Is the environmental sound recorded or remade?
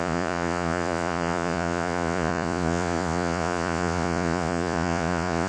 remade